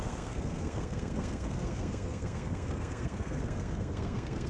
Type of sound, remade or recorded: remade